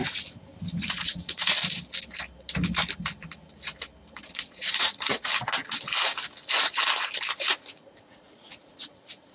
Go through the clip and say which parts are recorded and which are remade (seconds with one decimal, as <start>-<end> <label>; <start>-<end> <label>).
0.0-0.8 recorded; 0.8-1.6 remade; 1.6-4.3 recorded; 4.3-5.3 remade; 5.3-7.4 recorded; 7.4-9.3 remade